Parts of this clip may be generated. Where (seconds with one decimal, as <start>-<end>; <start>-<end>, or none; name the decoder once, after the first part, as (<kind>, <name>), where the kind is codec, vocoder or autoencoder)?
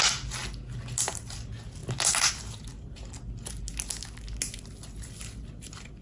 none